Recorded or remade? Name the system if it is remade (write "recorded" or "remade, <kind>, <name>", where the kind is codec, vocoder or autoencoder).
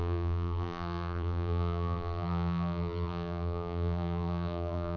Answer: remade, vocoder, BigVGAN v2